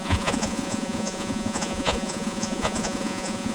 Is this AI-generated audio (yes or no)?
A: yes